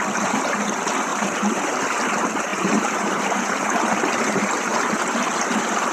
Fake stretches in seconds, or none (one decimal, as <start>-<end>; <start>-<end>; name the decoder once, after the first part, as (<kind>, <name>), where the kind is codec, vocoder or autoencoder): 1.1-1.8 (vocoder, BigVGAN v2); 2.5-3.8